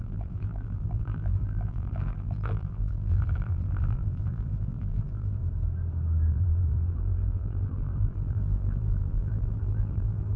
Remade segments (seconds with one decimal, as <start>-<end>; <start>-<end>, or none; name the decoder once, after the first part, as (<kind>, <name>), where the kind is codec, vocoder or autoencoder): 0.0-5.4 (vocoder, BigVGAN v2); 6.3-10.4